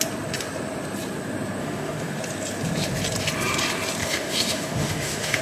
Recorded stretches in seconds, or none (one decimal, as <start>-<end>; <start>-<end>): 0.0-1.6; 2.2-4.0